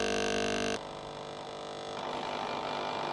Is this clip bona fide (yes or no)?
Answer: yes